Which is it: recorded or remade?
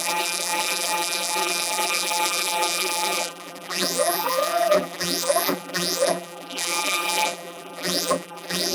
remade